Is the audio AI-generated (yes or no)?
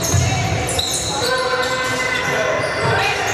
no